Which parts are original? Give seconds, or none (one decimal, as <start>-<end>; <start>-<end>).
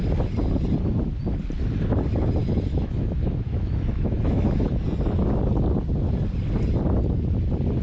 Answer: 0.0-2.4; 4.8-7.8